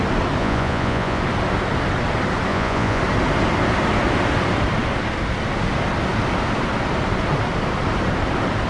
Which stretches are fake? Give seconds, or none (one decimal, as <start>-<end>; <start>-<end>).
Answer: 0.4-1.2; 2.5-3.0